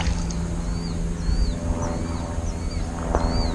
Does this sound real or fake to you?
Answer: real